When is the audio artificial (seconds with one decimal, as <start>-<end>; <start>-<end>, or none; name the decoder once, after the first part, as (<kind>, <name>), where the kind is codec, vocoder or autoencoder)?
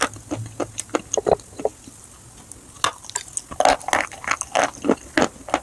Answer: none